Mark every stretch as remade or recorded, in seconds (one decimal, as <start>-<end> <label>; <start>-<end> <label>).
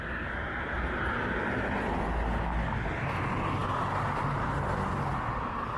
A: 0.0-5.8 recorded